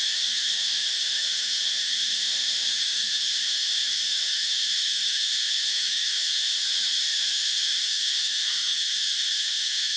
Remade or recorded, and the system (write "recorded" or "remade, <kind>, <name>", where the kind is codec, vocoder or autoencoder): remade, autoencoder, DAC-VAE